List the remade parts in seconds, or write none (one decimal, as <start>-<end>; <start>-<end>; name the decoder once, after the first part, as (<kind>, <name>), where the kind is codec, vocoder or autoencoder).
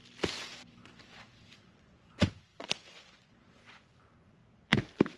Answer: 1.5-4.4 (vocoder, Vocos)